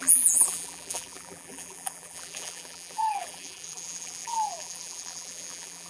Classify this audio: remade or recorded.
remade